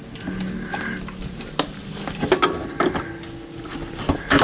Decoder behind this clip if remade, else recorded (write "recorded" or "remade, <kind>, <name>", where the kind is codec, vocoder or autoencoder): recorded